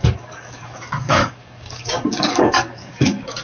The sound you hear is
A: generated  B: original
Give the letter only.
A